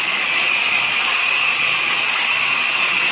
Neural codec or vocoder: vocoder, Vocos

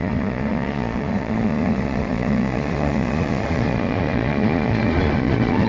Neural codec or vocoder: vocoder, Vocos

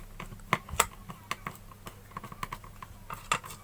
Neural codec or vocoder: none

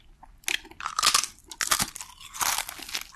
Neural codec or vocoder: none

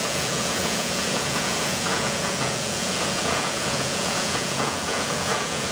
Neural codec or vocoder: vocoder, Vocos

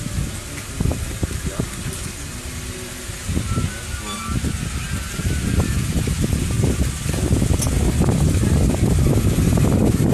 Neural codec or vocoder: none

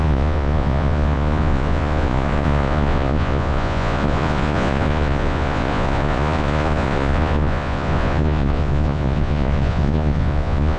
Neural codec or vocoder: vocoder, Vocos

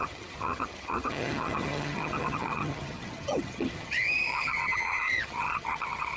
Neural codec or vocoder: vocoder, HiFi-GAN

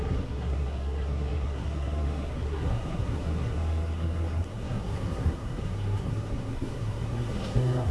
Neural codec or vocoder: codec, SNAC